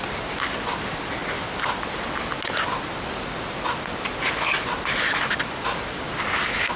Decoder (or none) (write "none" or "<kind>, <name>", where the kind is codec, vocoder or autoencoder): none